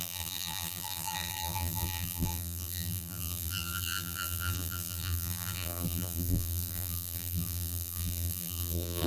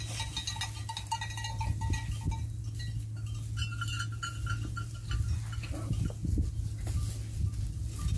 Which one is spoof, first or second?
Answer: first